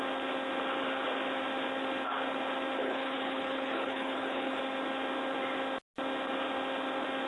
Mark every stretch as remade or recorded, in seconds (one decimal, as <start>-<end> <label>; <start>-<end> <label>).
0.0-2.8 recorded; 2.8-4.6 remade; 4.6-7.3 recorded